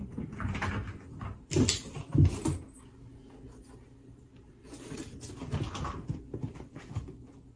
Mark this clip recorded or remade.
recorded